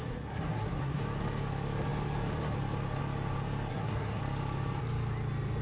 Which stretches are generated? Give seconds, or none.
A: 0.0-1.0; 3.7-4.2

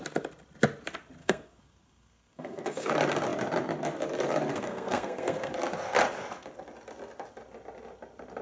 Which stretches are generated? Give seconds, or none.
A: 1.2-2.9; 4.5-5.5

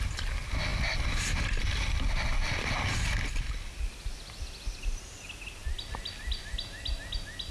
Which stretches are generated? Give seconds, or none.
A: none

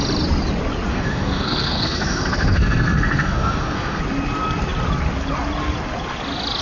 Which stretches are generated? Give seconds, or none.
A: 0.9-4.0

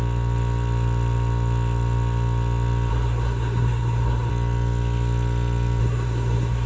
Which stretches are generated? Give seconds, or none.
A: 2.9-4.3; 5.8-6.7

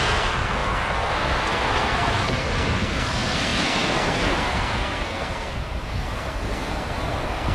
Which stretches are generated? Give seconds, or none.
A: 0.0-7.5